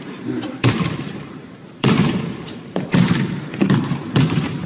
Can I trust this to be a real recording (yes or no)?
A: no